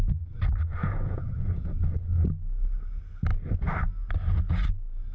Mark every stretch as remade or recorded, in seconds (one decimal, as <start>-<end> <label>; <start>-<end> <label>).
0.0-0.8 recorded; 0.8-1.8 remade; 1.8-5.1 recorded